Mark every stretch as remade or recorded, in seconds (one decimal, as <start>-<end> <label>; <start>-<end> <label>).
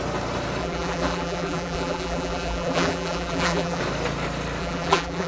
0.0-0.6 recorded; 0.6-3.8 remade; 3.8-4.6 recorded; 4.6-5.3 remade